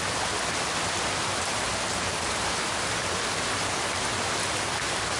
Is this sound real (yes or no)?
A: yes